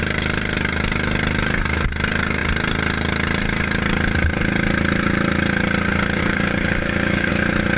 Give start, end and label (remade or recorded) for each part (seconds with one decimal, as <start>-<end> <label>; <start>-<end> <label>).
0.0-6.2 recorded; 6.2-7.3 remade; 7.3-7.8 recorded